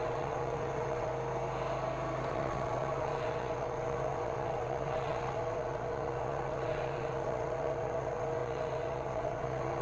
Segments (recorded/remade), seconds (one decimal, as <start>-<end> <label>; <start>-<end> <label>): 0.0-1.1 remade; 1.1-2.3 recorded; 2.3-9.8 remade